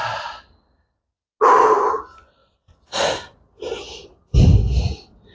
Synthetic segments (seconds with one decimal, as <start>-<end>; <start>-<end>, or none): none